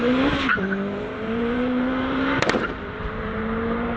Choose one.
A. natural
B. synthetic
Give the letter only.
B